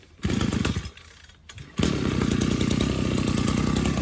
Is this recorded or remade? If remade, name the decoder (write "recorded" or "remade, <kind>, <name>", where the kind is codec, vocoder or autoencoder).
recorded